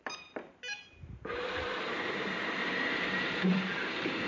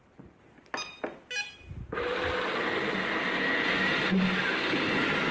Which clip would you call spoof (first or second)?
first